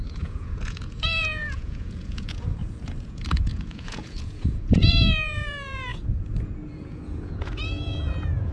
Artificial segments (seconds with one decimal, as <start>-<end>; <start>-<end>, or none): 0.0-8.5